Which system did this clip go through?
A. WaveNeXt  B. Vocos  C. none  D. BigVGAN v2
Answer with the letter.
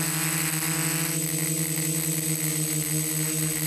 C